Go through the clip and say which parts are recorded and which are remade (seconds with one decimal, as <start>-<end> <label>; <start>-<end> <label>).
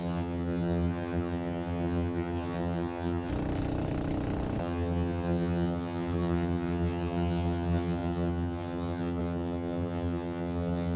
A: 0.0-3.3 remade; 3.3-4.6 recorded; 4.6-11.0 remade